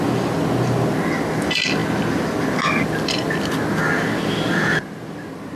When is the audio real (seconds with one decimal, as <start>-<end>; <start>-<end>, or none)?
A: 0.0-5.6